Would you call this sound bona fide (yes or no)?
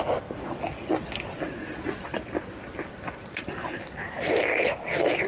yes